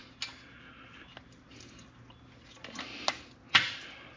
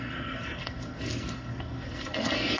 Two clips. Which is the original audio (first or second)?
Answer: first